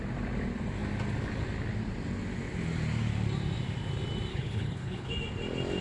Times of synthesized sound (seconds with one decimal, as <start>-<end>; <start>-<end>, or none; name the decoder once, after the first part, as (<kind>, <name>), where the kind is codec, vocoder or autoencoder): 4.3-5.1 (codec, HILCodec)